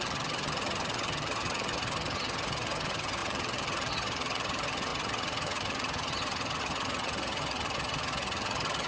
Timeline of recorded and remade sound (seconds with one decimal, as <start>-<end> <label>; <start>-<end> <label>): 0.0-8.9 remade